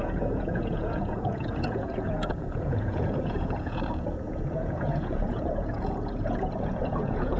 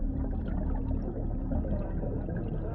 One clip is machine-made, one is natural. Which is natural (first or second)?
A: second